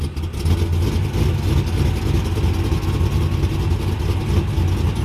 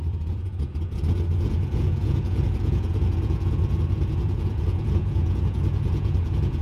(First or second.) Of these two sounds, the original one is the first